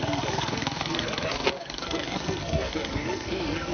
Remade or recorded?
remade